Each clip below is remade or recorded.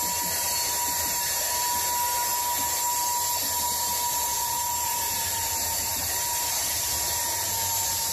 recorded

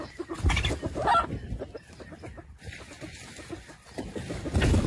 recorded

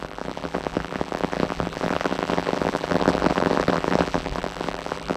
remade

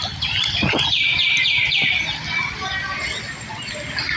recorded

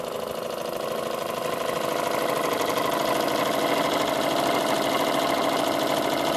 recorded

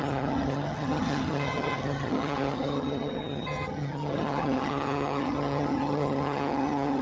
remade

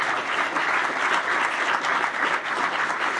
recorded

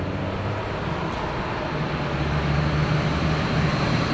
recorded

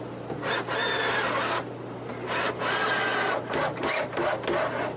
recorded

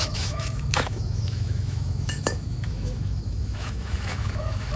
remade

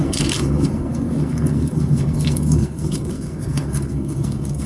remade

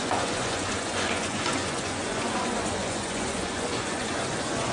remade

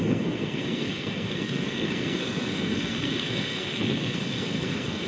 remade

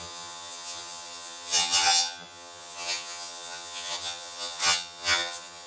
remade